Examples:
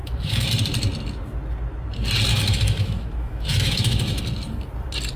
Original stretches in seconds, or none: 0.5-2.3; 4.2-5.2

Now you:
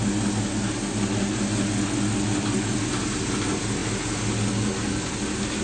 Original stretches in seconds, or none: 0.0-5.6